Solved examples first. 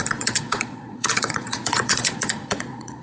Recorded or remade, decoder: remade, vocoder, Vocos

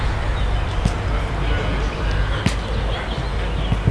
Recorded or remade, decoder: recorded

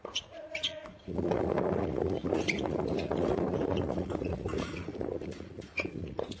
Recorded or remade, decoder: remade, vocoder, Vocos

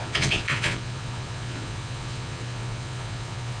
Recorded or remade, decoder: remade, vocoder, Vocos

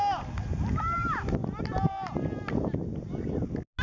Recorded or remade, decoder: recorded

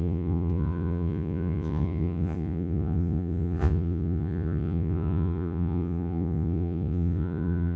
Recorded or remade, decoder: remade, vocoder, Vocos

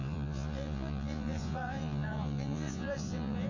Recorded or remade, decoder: remade, vocoder, Vocos